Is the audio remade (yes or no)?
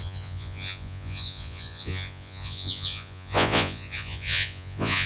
yes